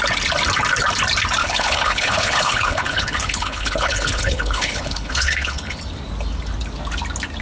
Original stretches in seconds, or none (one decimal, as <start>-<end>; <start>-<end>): 0.0-1.4; 5.8-7.4